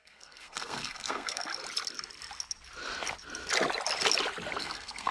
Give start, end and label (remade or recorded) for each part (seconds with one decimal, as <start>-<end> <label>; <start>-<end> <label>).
0.0-1.5 remade; 1.5-4.6 recorded; 4.6-5.1 remade